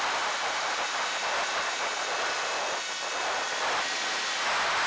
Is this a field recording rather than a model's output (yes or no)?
yes